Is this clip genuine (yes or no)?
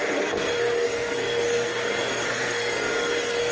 no